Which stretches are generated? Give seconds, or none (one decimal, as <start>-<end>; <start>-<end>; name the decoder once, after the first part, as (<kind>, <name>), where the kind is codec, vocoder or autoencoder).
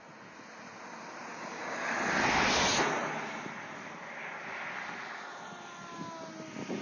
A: 1.3-1.9 (codec, DAC)